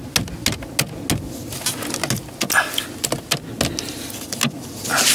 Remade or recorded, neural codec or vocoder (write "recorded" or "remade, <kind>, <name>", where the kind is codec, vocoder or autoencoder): recorded